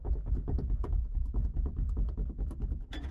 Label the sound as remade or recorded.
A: recorded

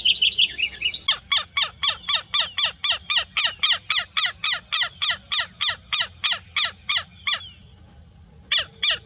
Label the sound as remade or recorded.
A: recorded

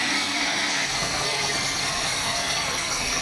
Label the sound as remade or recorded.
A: remade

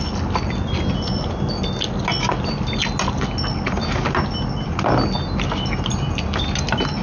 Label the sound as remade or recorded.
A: recorded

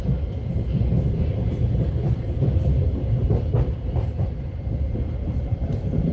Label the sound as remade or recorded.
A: remade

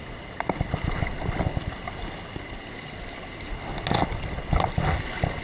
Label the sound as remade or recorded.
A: recorded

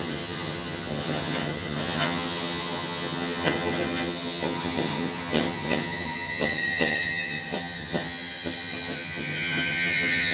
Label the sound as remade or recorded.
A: remade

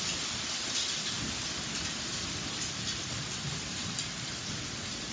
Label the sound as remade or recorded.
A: recorded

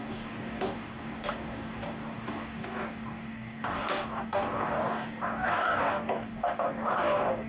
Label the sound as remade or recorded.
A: remade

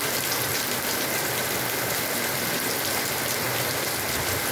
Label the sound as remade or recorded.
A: recorded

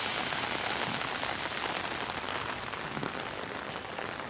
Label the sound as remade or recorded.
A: recorded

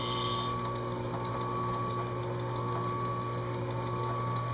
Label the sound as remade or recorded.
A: recorded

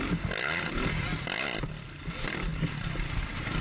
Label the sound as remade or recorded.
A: recorded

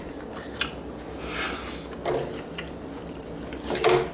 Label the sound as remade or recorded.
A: recorded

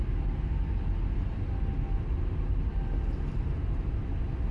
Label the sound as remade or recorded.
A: recorded